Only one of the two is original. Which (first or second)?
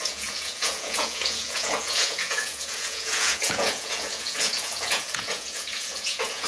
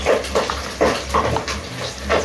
second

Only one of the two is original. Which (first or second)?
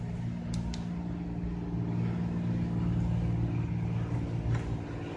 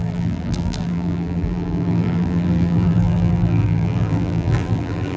first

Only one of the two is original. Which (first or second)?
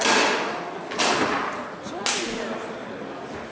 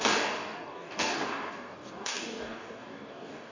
first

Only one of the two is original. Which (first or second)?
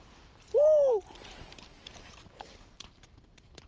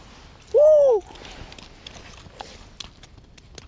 second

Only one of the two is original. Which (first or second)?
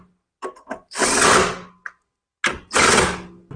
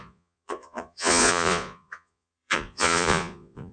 first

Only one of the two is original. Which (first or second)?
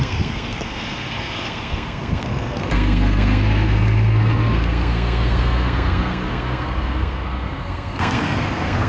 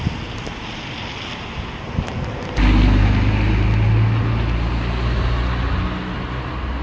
second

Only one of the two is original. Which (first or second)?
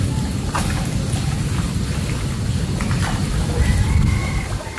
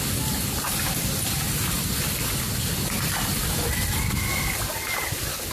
first